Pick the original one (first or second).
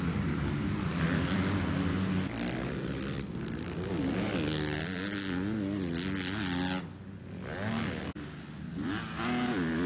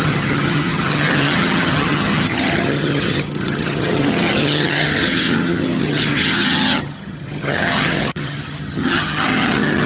first